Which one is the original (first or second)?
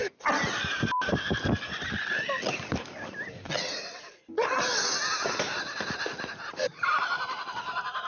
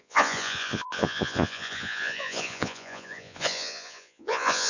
first